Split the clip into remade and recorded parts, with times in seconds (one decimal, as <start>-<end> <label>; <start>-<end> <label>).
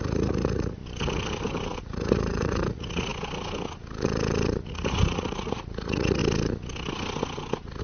0.0-0.8 remade; 0.8-1.8 recorded; 1.8-3.1 remade; 3.1-4.7 recorded; 4.7-6.2 remade; 6.2-7.8 recorded